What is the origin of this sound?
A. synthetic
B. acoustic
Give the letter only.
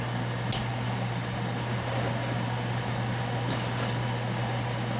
B